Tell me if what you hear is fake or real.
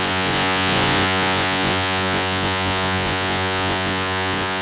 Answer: fake